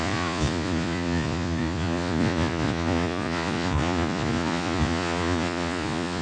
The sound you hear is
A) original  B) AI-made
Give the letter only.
B